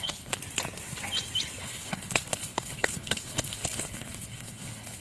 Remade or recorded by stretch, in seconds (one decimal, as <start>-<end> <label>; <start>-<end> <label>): 0.0-0.4 remade; 0.4-1.6 recorded; 1.6-5.0 remade